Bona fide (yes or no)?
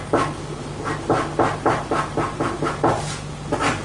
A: yes